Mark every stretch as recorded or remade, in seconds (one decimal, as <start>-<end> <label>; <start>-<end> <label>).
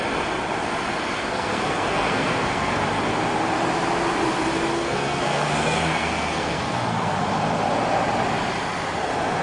0.0-1.2 recorded; 1.2-2.7 remade; 2.7-4.7 recorded; 4.7-7.2 remade; 7.2-9.4 recorded